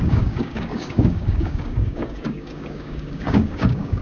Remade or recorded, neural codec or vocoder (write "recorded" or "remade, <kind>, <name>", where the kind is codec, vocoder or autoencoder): remade, codec, DAC